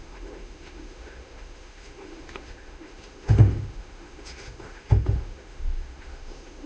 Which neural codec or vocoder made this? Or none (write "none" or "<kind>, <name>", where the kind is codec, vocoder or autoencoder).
autoencoder, DAC-VAE